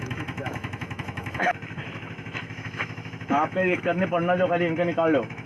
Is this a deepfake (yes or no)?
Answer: yes